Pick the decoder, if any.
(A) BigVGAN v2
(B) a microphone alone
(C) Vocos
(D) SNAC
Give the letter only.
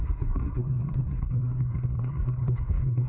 D